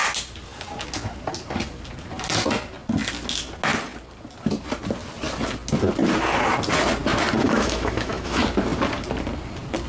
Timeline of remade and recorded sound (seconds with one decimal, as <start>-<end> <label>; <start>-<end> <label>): 0.0-7.4 recorded; 7.4-8.4 remade; 8.4-9.9 recorded